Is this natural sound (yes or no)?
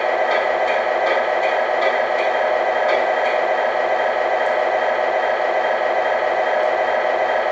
yes